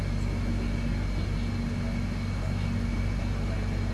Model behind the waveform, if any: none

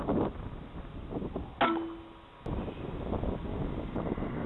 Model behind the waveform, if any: none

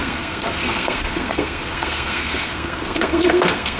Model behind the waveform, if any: codec, SNAC